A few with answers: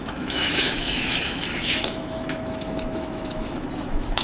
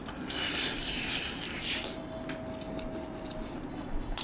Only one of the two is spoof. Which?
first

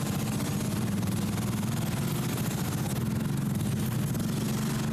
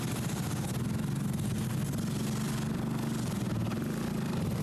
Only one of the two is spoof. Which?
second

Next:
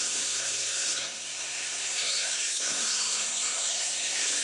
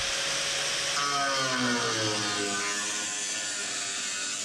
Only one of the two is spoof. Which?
first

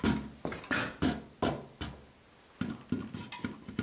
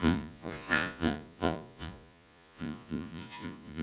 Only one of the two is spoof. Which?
second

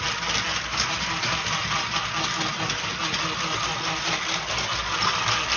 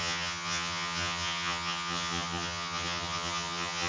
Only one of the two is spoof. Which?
second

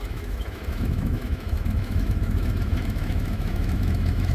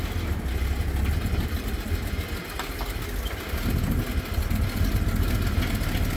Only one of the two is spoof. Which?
first